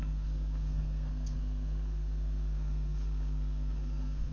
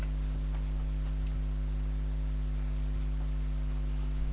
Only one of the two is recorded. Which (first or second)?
second